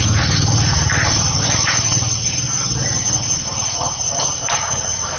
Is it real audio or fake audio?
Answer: fake